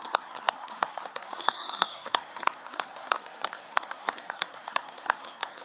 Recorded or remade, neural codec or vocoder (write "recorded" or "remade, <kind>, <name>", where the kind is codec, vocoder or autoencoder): remade, codec, SNAC